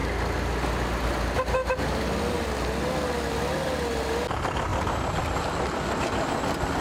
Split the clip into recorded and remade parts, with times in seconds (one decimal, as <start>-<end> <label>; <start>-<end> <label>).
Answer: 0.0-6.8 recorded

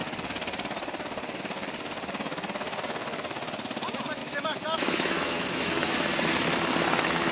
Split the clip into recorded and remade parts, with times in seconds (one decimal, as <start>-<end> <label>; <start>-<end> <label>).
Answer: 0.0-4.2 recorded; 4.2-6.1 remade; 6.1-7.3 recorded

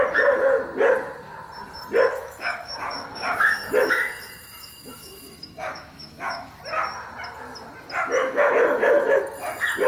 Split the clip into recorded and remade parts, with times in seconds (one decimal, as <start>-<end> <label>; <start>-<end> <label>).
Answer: 0.0-2.1 recorded; 2.1-6.6 remade; 6.6-8.2 recorded; 8.2-9.2 remade; 9.2-9.9 recorded

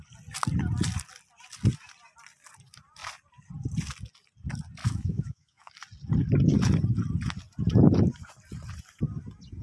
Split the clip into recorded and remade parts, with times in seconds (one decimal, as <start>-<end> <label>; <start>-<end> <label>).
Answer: 0.0-4.8 recorded; 4.8-5.7 remade; 5.7-9.6 recorded

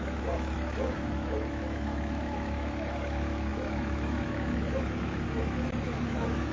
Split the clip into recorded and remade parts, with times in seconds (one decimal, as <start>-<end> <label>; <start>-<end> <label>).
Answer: 0.0-6.5 remade

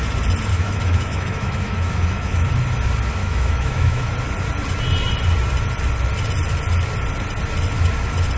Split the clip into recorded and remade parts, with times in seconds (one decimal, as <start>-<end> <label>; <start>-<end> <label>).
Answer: 0.0-0.5 recorded; 0.5-2.5 remade; 2.5-3.2 recorded; 3.2-4.1 remade; 4.1-8.4 recorded

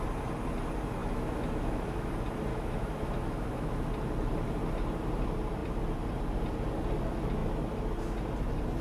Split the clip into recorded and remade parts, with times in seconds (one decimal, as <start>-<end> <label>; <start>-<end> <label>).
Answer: 0.0-1.0 recorded; 1.0-2.1 remade; 2.1-2.5 recorded; 2.5-3.9 remade; 3.9-8.8 recorded